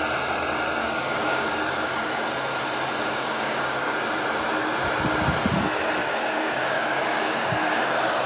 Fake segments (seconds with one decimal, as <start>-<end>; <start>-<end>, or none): 0.8-1.6; 3.0-3.9; 6.0-8.3